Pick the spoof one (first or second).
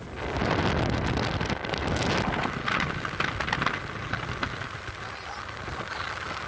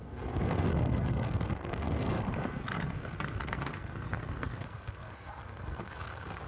second